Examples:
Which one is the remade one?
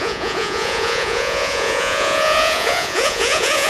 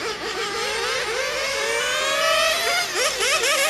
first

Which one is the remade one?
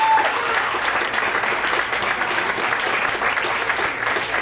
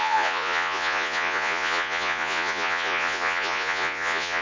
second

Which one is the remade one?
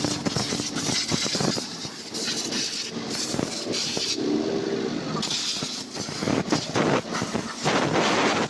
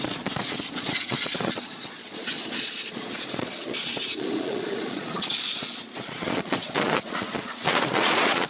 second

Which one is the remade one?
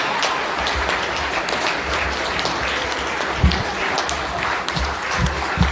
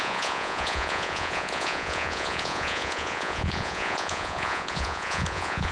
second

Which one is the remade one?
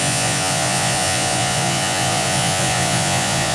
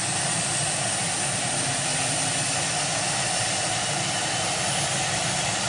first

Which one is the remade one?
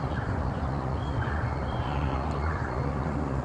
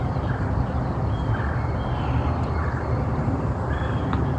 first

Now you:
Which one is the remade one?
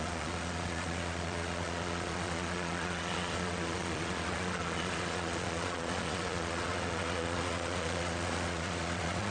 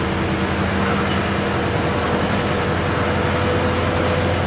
first